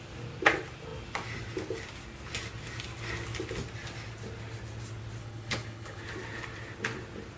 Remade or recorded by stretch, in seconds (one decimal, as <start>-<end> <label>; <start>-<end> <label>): 0.0-5.2 recorded; 5.2-6.0 remade; 6.0-7.4 recorded